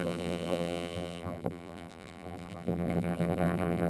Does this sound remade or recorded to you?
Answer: remade